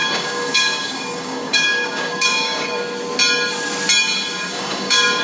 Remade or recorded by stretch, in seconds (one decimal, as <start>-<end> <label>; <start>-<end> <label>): 0.0-2.8 remade; 2.8-4.3 recorded; 4.3-5.2 remade

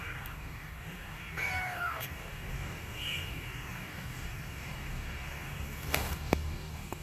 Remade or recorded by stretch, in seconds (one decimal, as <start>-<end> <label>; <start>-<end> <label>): 0.0-7.0 remade

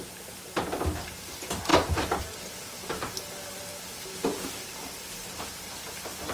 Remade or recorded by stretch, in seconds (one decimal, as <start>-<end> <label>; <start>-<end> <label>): 0.0-6.3 recorded

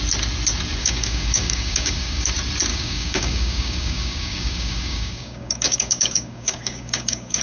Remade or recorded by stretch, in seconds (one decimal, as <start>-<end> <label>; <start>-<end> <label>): 0.0-0.8 recorded; 0.8-2.3 remade; 2.3-2.7 recorded; 2.7-7.4 remade

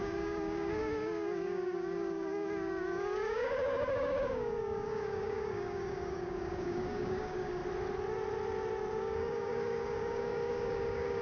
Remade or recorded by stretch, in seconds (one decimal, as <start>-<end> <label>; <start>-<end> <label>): 0.0-7.6 remade; 7.6-8.9 recorded; 8.9-11.2 remade

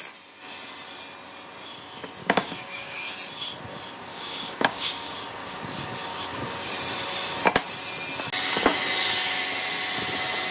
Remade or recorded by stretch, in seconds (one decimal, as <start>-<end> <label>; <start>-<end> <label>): 0.0-2.2 recorded; 2.2-3.1 remade; 3.1-4.1 recorded; 4.1-5.6 remade; 5.6-6.1 recorded; 6.1-6.7 remade; 6.7-10.5 recorded